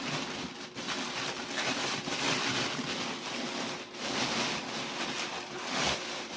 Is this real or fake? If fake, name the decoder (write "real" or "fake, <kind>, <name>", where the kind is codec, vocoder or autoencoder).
real